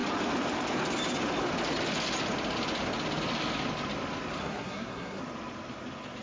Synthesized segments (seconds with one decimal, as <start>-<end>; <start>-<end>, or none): 4.4-5.2